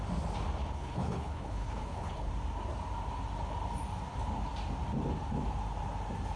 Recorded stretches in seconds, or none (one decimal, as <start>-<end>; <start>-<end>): 0.0-0.6; 2.3-6.4